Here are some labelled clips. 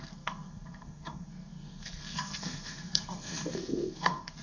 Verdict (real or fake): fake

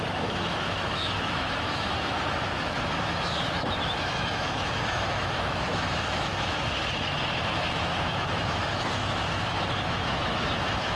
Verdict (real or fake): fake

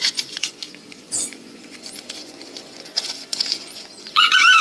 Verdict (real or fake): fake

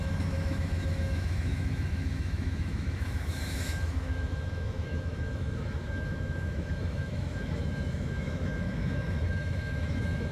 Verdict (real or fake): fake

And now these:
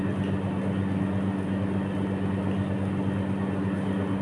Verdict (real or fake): real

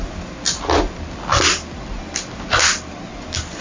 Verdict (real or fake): real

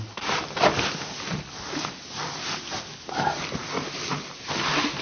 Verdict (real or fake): real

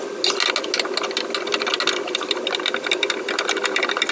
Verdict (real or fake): real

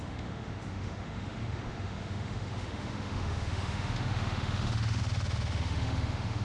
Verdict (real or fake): fake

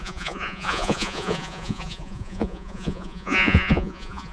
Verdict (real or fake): fake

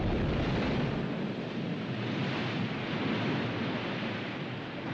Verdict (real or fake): real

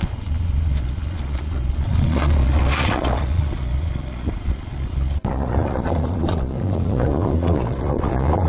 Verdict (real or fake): fake